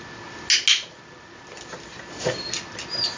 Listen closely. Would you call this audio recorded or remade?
recorded